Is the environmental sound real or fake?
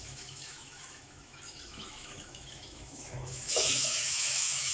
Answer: fake